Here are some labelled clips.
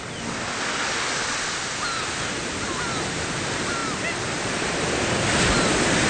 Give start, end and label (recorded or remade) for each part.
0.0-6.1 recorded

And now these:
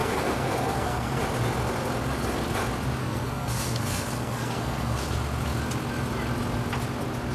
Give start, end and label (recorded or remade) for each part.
0.0-1.2 remade; 1.2-3.0 recorded; 3.0-5.0 remade; 5.0-7.3 recorded

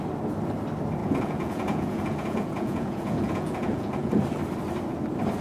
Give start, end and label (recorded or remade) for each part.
0.0-1.0 recorded; 1.0-4.2 remade; 4.2-5.4 recorded

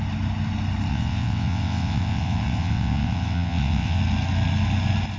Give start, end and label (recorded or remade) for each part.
0.0-0.9 recorded; 0.9-4.0 remade; 4.0-5.2 recorded

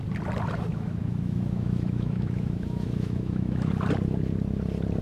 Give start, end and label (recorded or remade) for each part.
0.0-0.7 recorded; 0.7-3.7 remade; 3.7-5.0 recorded

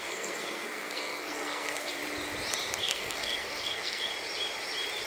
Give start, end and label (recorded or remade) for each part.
0.0-2.0 remade; 2.0-2.8 recorded; 2.8-4.1 remade; 4.1-5.1 recorded

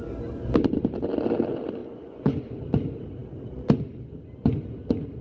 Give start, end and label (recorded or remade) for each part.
0.0-1.8 recorded; 1.8-2.5 remade; 2.5-5.2 recorded